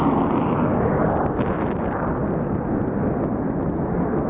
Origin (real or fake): real